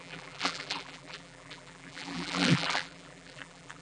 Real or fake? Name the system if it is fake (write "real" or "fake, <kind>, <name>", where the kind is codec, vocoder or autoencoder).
fake, vocoder, BigVGAN v2